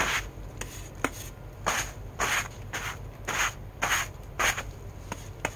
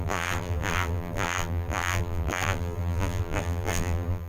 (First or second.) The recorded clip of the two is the first